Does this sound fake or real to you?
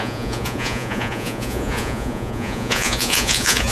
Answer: fake